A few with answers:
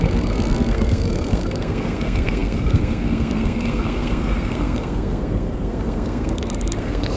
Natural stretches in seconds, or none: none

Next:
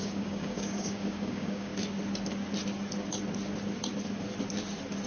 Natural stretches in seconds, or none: 1.7-5.1

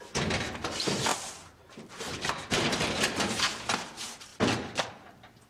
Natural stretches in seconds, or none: 0.0-5.5

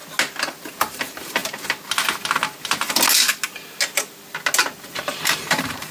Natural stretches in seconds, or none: 0.0-0.8; 1.4-4.9